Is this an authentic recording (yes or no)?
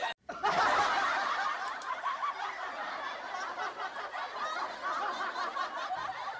yes